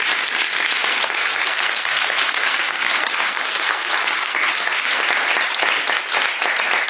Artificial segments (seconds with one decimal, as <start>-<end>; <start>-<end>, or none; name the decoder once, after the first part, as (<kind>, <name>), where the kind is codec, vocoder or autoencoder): 0.9-5.0 (codec, SNAC)